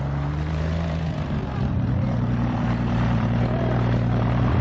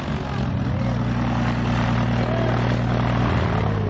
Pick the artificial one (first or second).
first